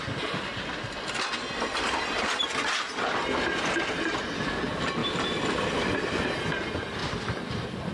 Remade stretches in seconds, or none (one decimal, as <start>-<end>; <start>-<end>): 5.0-6.3; 7.0-7.9